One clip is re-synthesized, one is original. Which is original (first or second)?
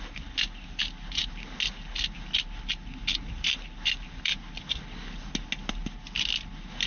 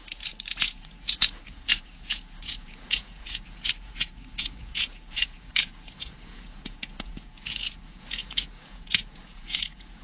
first